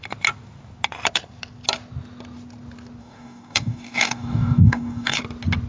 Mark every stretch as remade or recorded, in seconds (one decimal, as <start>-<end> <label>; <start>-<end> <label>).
0.0-3.0 recorded; 3.0-5.2 remade; 5.2-5.7 recorded